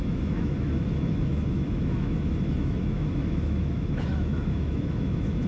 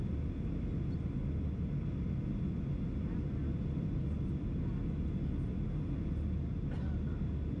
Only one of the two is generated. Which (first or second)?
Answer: first